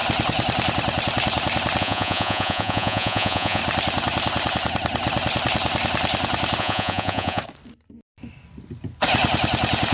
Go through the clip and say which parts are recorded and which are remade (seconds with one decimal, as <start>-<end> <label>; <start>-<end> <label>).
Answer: 0.0-1.8 recorded; 1.8-3.6 remade; 3.6-6.6 recorded; 6.6-7.4 remade; 7.4-9.9 recorded